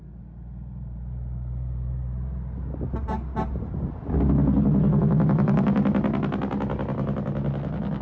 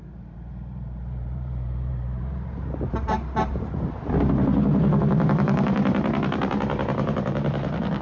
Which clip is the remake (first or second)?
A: second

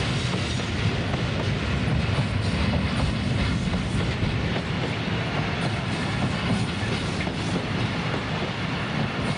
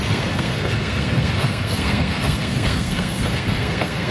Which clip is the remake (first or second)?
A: second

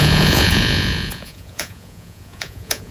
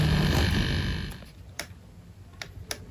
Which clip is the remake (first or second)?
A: first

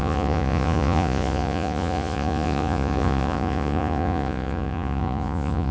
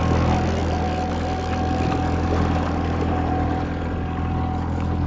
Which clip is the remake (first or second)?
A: first